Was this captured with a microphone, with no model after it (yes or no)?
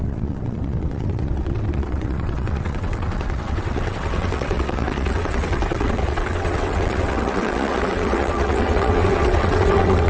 no